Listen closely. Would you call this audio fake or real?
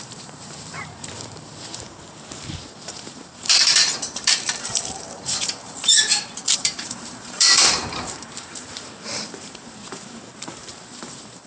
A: fake